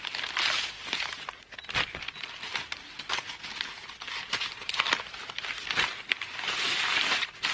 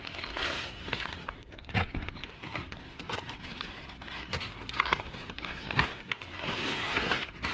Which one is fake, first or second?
second